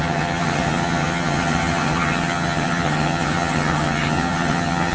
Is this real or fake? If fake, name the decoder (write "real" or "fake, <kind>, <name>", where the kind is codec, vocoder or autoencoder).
fake, vocoder, HiFi-GAN